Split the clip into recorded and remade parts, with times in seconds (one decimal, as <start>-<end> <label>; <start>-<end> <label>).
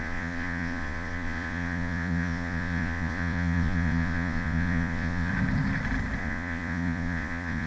0.0-5.3 remade; 5.3-6.2 recorded; 6.2-7.7 remade